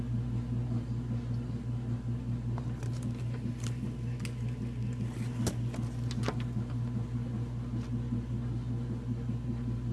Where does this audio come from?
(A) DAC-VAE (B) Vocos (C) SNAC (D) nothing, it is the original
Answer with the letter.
D